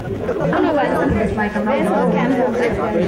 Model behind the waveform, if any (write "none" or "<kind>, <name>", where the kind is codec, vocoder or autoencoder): vocoder, Vocos